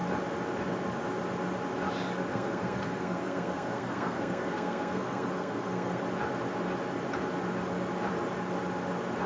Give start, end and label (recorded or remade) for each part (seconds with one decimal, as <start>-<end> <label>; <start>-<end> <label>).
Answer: 0.0-2.3 recorded; 2.3-6.0 remade; 6.0-9.3 recorded